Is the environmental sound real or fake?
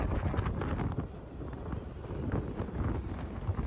real